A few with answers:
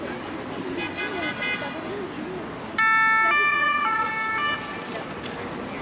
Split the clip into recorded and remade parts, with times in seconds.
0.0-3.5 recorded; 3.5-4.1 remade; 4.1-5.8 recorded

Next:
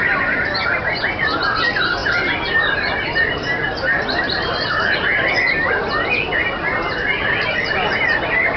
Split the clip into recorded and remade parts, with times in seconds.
0.0-8.6 recorded

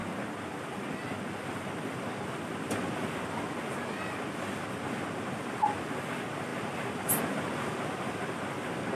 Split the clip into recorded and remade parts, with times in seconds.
0.0-9.0 recorded

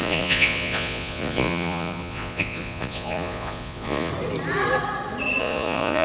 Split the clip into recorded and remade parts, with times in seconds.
0.0-4.1 remade; 4.1-5.4 recorded; 5.4-6.0 remade

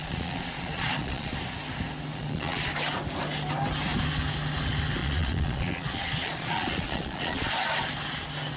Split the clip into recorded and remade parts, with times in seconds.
0.0-1.3 remade; 1.3-2.1 recorded; 2.1-2.7 remade; 2.7-5.0 recorded; 5.0-7.5 remade; 7.5-8.6 recorded

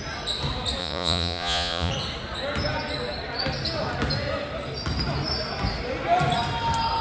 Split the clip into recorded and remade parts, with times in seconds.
0.0-0.8 recorded; 0.8-1.9 remade; 1.9-7.0 recorded

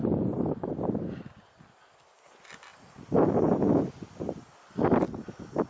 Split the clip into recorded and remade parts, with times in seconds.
0.0-5.7 recorded

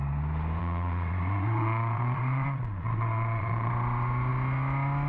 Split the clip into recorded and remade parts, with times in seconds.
0.0-0.6 recorded; 0.6-3.7 remade; 3.7-5.1 recorded